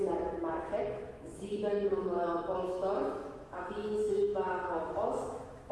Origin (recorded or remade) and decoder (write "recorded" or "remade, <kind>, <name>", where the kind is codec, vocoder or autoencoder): remade, autoencoder, DAC-VAE